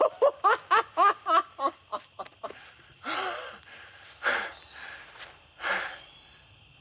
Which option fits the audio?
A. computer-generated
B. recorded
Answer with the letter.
B